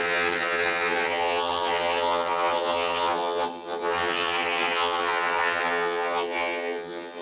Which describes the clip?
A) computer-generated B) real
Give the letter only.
A